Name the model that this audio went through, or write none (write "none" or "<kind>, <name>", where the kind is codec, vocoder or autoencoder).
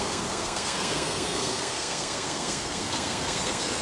codec, SNAC